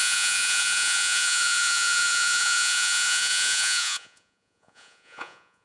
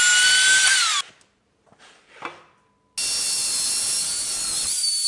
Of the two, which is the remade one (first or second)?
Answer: first